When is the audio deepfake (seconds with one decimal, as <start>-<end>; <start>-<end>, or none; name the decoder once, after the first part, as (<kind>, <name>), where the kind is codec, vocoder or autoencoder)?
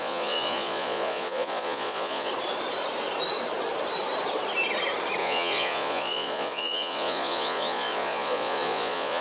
0.0-2.3 (vocoder, Vocos); 5.2-9.2